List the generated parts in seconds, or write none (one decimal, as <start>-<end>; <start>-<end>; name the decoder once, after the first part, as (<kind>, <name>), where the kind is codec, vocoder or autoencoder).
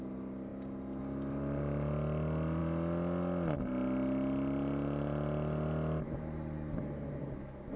none